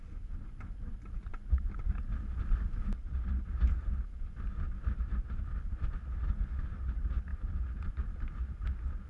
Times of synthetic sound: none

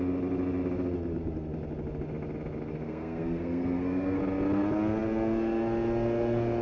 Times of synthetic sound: 2.7-4.2 (codec, SNAC)